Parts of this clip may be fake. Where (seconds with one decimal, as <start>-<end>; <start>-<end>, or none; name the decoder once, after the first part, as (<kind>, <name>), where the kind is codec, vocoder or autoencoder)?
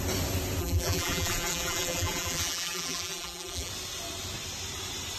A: 0.6-3.7 (vocoder, BigVGAN v2)